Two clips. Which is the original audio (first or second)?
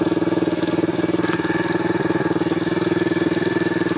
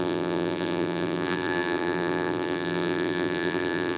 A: first